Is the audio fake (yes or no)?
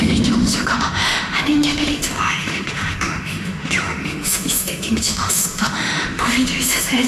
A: yes